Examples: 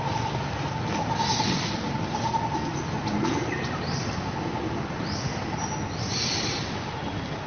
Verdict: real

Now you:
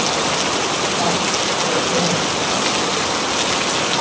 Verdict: real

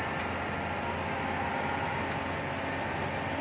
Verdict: real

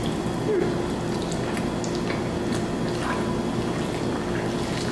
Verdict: real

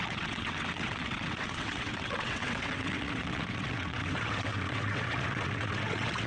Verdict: fake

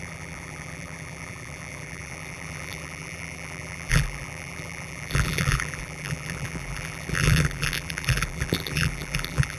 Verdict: fake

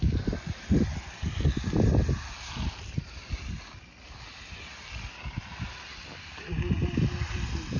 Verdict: real